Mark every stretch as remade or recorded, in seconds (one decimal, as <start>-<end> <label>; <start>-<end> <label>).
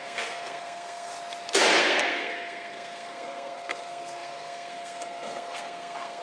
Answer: 0.0-1.1 remade; 1.1-1.8 recorded; 1.8-6.2 remade